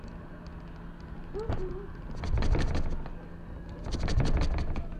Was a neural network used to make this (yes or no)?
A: no